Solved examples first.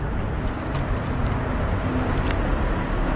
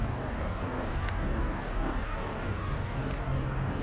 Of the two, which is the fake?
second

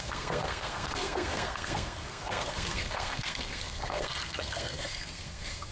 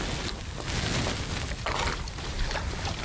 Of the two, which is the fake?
first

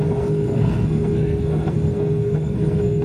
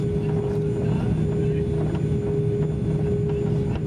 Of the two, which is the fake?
first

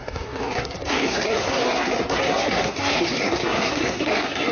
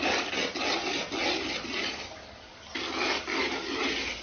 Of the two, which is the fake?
first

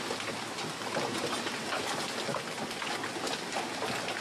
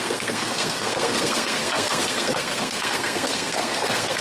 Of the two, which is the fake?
second